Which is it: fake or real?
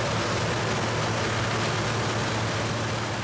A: real